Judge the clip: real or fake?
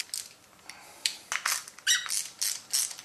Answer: real